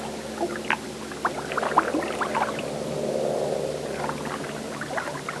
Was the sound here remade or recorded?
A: recorded